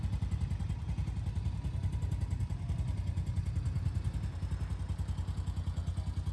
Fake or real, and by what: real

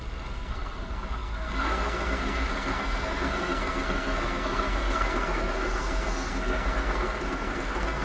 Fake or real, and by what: fake, codec, SNAC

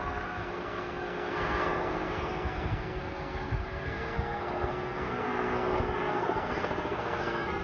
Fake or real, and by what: fake, codec, SNAC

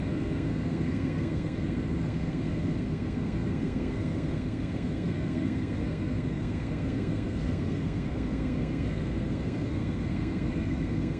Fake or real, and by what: fake, codec, SNAC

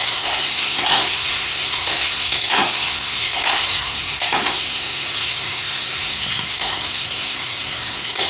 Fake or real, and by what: fake, codec, SNAC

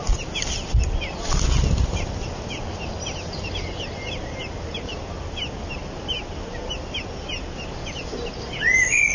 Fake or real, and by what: real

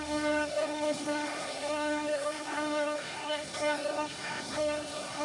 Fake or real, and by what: fake, codec, SNAC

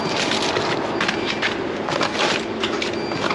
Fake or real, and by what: real